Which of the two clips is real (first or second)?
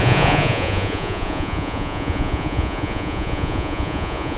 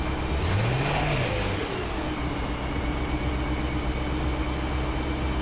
second